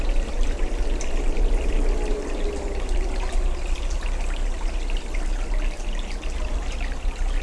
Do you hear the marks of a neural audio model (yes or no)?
no